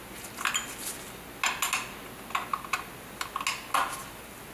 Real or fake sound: real